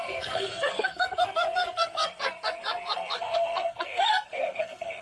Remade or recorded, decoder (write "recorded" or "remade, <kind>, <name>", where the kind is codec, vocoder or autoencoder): remade, codec, SNAC